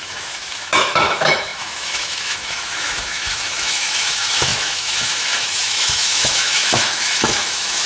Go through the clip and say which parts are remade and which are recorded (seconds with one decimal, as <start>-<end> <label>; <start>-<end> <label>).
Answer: 0.0-7.9 remade